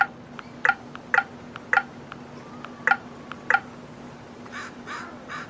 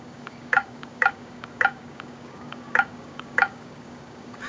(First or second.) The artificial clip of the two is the second